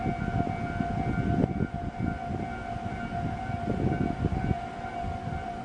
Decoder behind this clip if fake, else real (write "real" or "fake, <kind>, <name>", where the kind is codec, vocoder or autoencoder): real